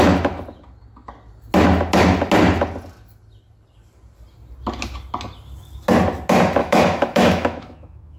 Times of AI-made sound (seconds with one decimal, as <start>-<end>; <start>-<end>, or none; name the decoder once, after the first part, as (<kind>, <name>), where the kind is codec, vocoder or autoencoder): 6.6-8.2 (autoencoder, DAC-VAE)